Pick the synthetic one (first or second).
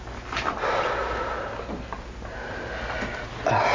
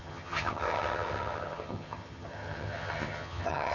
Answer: second